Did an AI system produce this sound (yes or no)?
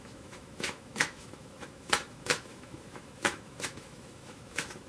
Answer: yes